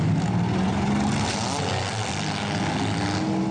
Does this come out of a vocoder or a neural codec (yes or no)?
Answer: no